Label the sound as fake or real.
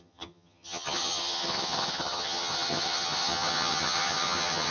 fake